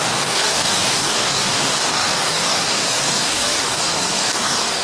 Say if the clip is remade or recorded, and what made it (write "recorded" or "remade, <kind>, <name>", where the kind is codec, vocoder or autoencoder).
remade, codec, DAC